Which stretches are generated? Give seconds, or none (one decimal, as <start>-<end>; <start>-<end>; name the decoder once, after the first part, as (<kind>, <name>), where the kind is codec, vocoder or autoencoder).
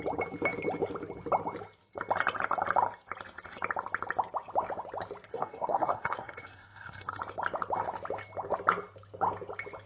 5.3-7.2 (codec, SNAC)